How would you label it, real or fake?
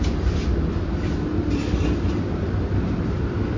fake